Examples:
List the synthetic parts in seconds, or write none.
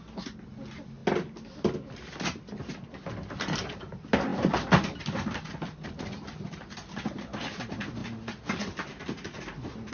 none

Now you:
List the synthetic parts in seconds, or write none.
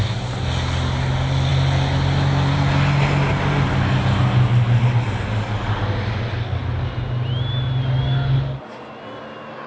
none